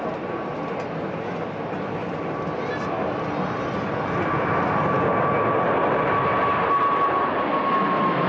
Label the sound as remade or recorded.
recorded